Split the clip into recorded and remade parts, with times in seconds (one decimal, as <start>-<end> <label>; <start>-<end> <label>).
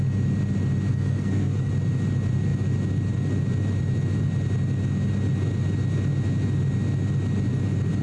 0.0-0.9 recorded; 0.9-1.7 remade; 1.7-8.0 recorded